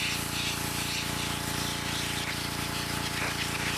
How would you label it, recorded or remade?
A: recorded